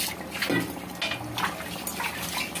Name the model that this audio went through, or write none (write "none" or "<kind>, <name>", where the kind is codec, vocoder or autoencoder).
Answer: none